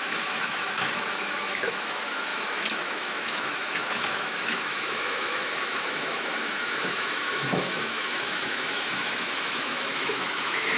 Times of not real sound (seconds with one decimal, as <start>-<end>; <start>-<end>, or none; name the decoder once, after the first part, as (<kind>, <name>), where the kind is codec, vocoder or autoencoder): 0.0-10.8 (autoencoder, DAC-VAE)